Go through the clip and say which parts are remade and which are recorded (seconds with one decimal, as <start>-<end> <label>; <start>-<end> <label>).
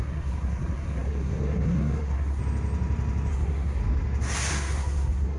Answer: 0.0-2.4 remade; 2.4-3.3 recorded; 3.3-3.8 remade; 3.8-4.5 recorded; 4.5-5.4 remade